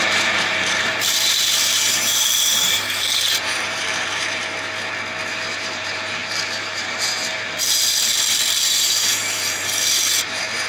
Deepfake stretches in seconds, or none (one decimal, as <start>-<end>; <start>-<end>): 0.0-4.4; 5.3-10.7